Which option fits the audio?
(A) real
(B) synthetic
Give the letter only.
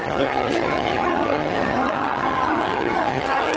B